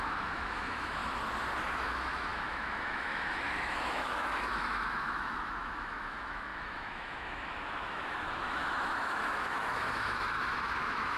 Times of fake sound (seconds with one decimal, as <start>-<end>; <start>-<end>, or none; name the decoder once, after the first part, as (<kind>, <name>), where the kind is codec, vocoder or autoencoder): 0.0-1.0 (autoencoder, DAC-VAE); 1.7-11.2